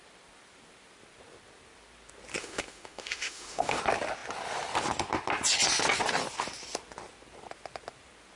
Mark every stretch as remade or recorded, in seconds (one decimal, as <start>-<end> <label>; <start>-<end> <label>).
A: 0.0-2.4 recorded; 2.4-3.8 remade; 3.8-8.4 recorded